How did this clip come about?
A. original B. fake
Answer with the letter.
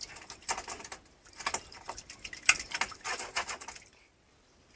A